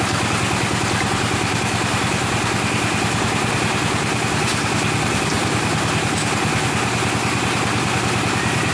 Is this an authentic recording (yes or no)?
yes